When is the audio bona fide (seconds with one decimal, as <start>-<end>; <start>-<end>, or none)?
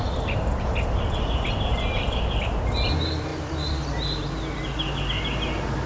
0.0-5.9